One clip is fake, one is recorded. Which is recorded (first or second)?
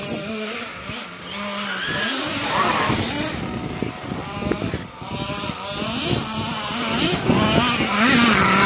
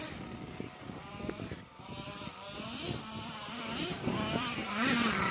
first